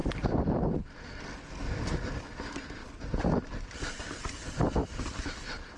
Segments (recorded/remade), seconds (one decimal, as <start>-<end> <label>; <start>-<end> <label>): 0.0-1.2 remade; 1.2-4.8 recorded; 4.8-5.8 remade